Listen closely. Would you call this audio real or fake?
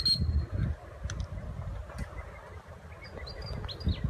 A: real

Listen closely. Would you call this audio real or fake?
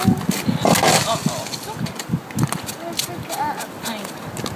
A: real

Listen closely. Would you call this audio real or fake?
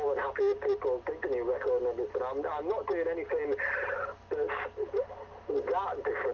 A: real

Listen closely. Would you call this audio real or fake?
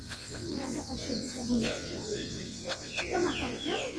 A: fake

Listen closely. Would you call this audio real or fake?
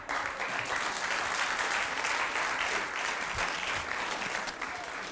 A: real